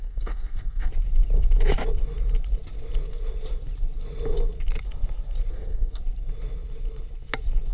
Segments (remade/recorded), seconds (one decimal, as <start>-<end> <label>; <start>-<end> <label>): 0.0-0.9 remade; 0.9-5.5 recorded; 5.5-6.0 remade; 6.0-7.7 recorded